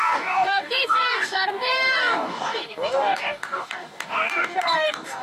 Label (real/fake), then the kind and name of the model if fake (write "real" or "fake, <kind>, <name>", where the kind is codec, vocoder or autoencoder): fake, codec, DAC